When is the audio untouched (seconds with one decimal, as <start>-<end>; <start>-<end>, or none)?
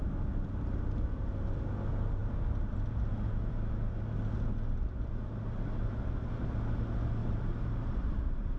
0.0-7.2